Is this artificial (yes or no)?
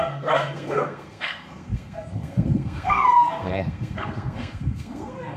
yes